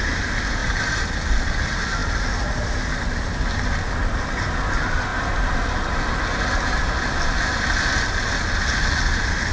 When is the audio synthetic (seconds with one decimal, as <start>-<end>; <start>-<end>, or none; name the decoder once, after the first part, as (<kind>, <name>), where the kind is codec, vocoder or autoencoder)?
none

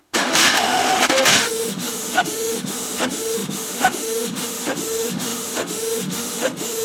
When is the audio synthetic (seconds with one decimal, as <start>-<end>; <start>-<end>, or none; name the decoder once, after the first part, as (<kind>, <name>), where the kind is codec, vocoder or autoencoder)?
0.0-6.8 (autoencoder, DAC-VAE)

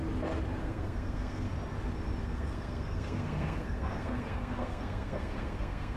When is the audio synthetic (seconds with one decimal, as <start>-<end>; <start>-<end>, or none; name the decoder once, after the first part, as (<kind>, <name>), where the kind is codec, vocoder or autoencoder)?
0.6-1.5 (codec, SNAC); 2.2-6.0

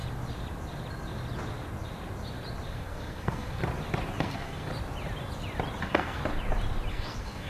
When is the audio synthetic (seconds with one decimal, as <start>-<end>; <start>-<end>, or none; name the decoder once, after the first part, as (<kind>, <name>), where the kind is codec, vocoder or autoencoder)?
2.7-3.6 (codec, SNAC); 4.2-4.7; 5.8-6.2; 6.9-7.5